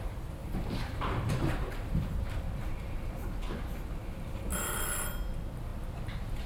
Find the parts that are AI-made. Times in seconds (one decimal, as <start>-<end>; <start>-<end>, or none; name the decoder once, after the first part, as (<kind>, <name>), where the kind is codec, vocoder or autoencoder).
0.4-2.4 (vocoder, BigVGAN v2)